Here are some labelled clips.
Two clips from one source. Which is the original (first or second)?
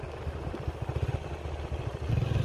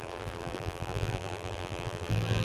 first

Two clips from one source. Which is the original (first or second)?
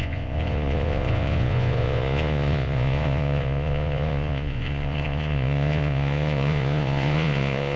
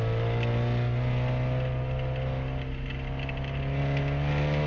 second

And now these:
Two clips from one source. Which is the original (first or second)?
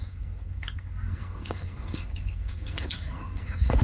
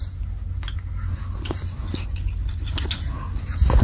second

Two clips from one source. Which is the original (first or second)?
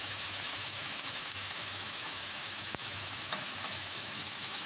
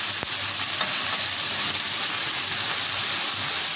second